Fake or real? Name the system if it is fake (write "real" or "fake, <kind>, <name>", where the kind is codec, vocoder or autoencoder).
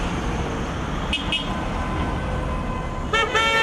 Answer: real